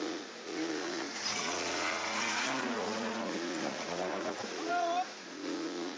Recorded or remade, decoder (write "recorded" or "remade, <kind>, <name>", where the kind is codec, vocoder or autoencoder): remade, vocoder, Vocos